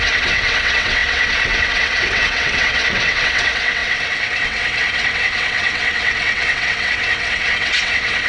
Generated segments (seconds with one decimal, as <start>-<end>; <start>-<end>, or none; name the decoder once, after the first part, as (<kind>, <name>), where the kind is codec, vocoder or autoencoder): 0.0-8.3 (vocoder, WaveNeXt)